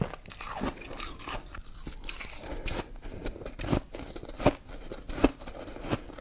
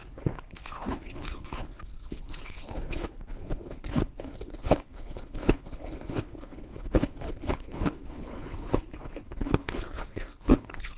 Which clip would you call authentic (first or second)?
first